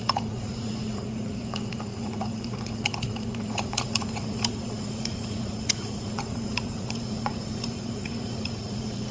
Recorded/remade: remade